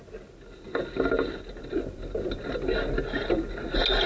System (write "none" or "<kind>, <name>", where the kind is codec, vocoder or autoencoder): none